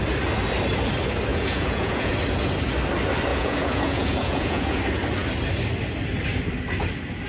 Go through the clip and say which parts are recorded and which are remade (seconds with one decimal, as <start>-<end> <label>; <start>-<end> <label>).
0.0-1.3 recorded; 1.3-2.1 remade; 2.1-3.3 recorded; 3.3-4.8 remade; 4.8-7.3 recorded